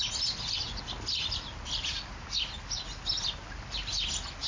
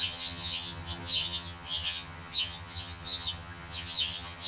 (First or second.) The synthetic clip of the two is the second